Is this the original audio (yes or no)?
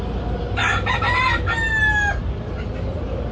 yes